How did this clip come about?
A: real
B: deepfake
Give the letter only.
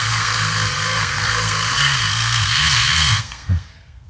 B